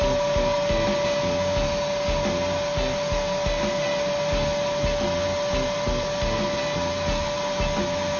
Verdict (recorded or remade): recorded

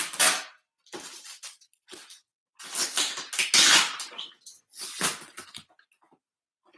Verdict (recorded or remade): recorded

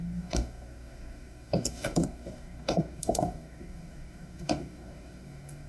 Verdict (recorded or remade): remade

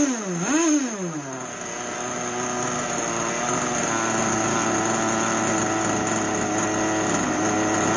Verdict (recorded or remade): recorded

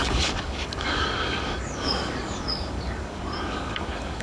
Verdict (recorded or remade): remade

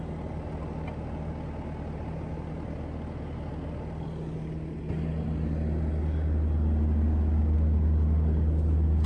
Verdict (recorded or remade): recorded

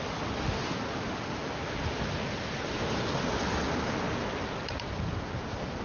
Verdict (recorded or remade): recorded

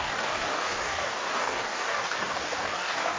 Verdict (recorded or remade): remade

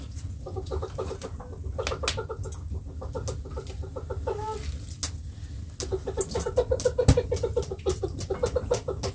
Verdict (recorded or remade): recorded